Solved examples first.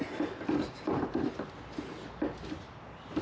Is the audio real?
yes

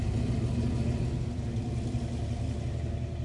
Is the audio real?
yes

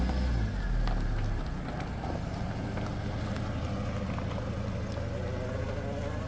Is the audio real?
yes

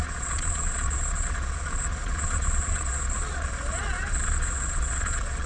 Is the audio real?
no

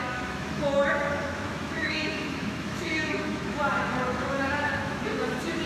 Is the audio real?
no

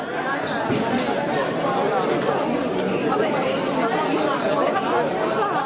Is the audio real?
yes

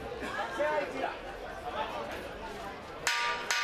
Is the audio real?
yes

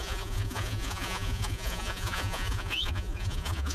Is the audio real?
no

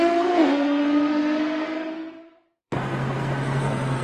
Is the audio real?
no